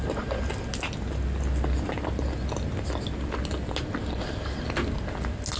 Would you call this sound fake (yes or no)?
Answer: no